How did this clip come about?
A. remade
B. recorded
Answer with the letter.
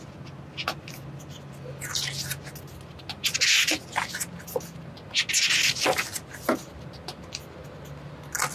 B